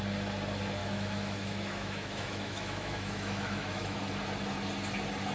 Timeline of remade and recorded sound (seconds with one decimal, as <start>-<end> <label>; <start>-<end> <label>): 0.0-0.8 recorded; 0.8-4.0 remade; 4.0-5.3 recorded